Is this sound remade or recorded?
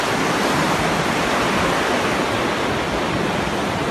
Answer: recorded